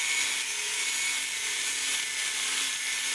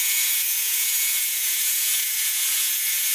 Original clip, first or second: first